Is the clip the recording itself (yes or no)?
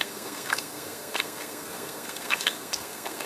no